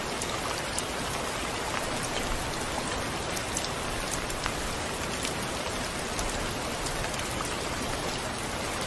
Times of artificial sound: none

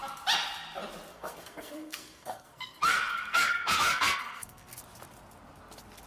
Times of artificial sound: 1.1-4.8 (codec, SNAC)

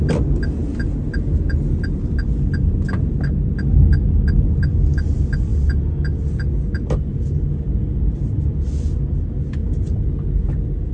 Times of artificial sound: none